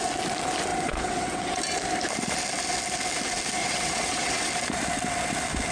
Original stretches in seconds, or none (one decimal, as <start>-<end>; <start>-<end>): 0.0-0.7; 1.6-3.6; 4.5-5.7